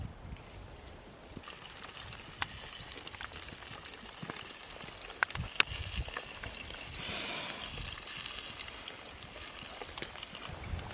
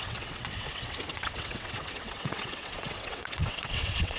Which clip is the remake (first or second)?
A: second